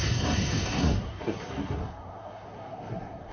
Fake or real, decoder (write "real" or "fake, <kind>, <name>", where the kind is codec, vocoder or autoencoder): fake, codec, SNAC